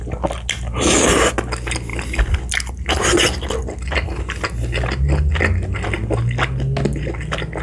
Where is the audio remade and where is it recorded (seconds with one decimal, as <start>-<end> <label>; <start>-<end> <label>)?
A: 0.0-7.6 recorded